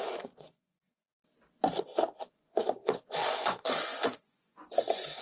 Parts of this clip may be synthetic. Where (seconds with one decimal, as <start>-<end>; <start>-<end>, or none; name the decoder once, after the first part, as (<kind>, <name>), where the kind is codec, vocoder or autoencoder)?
0.0-1.2 (vocoder, Vocos); 1.8-5.2